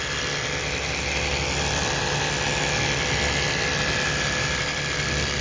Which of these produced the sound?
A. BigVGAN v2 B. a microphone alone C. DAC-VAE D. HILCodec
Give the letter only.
B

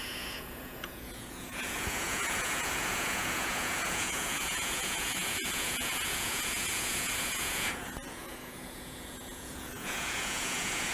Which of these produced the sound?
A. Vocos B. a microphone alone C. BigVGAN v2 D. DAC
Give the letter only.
A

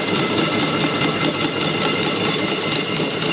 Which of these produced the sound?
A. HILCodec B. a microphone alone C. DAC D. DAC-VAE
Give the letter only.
B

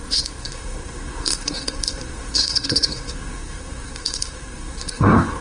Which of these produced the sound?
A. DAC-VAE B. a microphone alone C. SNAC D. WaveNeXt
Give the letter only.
C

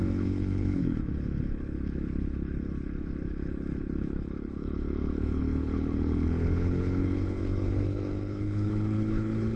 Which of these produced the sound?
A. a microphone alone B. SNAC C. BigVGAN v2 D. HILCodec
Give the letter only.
D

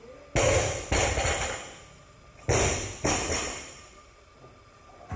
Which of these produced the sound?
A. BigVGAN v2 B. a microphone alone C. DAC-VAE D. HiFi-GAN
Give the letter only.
B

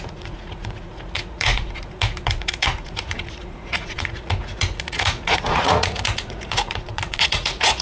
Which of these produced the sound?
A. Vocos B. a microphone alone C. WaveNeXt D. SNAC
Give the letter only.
A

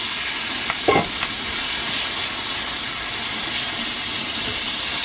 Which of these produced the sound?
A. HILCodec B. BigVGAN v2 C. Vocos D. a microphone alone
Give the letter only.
D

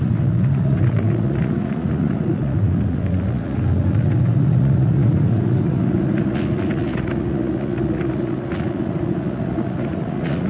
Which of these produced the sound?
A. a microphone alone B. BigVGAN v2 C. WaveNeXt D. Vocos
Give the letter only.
D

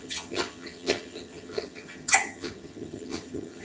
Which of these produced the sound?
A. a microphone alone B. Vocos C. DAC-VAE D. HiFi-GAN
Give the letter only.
D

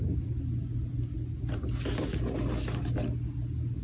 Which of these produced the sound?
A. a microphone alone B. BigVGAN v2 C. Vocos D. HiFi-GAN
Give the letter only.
A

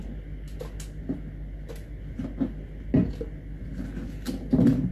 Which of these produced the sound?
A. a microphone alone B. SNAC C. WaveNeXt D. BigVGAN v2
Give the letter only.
A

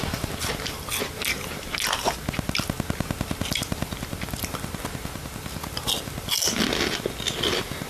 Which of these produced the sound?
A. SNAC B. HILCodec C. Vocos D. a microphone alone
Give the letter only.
D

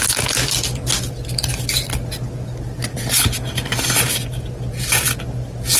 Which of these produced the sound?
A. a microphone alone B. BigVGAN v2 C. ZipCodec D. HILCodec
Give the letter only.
A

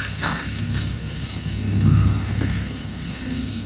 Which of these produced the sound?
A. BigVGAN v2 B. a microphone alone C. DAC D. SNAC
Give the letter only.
D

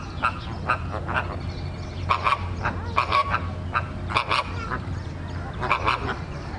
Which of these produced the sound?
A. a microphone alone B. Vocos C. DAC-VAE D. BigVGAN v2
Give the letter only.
A